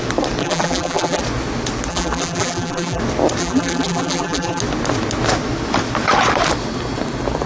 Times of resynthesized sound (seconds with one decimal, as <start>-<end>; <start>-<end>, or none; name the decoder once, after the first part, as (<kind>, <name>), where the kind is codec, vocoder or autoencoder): 0.4-1.2 (vocoder, BigVGAN v2); 1.9-3.0; 3.4-4.6